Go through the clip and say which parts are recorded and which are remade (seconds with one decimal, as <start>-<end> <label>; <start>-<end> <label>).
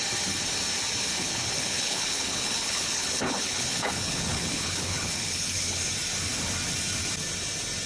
0.0-1.1 recorded; 1.1-5.8 remade; 5.8-7.9 recorded